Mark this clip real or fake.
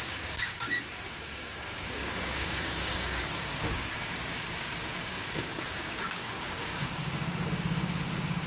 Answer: fake